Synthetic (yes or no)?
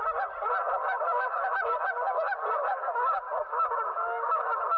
no